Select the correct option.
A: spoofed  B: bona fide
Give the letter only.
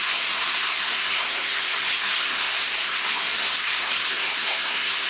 A